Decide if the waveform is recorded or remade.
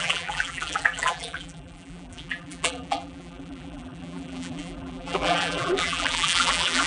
remade